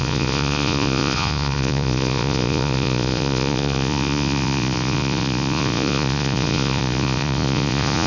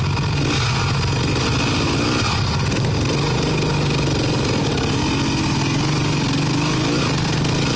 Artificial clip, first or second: first